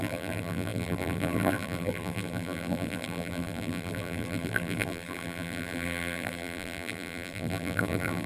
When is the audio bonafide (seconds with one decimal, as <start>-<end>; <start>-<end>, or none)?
none